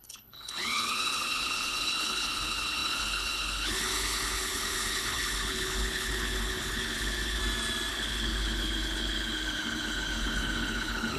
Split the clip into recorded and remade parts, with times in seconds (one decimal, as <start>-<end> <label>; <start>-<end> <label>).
0.0-7.4 remade; 7.4-7.9 recorded; 7.9-11.2 remade